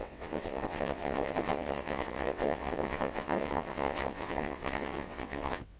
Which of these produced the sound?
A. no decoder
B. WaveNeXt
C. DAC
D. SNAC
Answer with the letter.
B